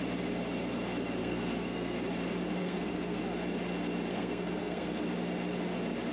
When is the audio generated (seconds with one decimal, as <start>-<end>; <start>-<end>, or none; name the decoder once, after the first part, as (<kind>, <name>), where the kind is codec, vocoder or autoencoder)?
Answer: 1.2-2.0 (codec, SNAC); 2.6-3.2; 4.1-5.0